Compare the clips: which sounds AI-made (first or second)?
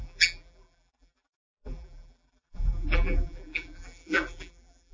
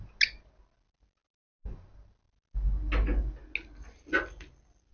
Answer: first